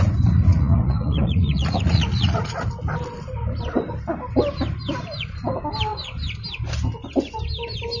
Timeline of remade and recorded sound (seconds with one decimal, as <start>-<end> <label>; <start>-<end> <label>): 0.0-0.5 recorded; 0.5-2.7 remade; 2.7-8.0 recorded